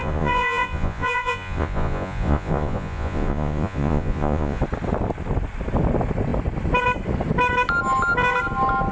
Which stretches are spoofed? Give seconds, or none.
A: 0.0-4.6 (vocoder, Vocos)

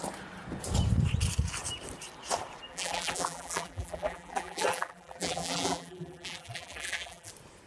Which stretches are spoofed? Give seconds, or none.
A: 2.7-7.3 (vocoder, BigVGAN v2)